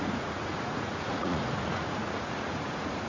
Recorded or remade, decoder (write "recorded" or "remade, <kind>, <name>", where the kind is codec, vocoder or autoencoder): remade, vocoder, Vocos